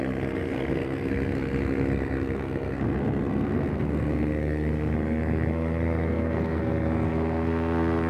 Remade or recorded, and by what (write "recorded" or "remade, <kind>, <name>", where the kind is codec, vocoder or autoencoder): remade, codec, SNAC